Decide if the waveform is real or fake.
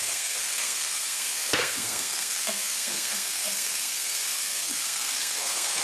fake